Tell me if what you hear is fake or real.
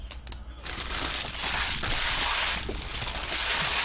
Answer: real